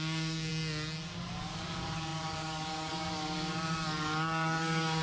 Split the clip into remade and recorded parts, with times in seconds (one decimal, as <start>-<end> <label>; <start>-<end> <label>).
0.0-0.5 remade; 0.5-1.4 recorded; 1.4-5.0 remade